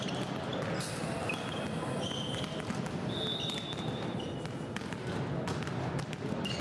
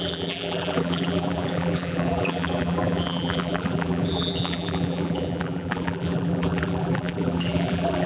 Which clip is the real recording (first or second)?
first